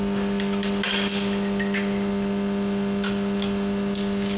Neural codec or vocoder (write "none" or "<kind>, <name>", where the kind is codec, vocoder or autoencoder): none